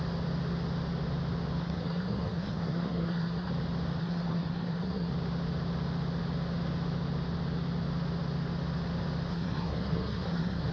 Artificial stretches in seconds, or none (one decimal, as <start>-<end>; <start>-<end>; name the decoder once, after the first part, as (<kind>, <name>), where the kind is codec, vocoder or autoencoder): 1.6-3.5 (codec, SNAC); 4.0-5.1; 9.3-10.7